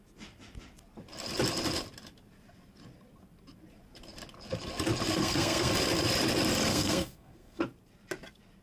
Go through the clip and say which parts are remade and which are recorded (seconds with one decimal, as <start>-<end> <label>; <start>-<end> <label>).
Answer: 0.0-5.1 recorded; 5.1-5.7 remade; 5.7-6.7 recorded; 6.7-7.6 remade; 7.6-8.6 recorded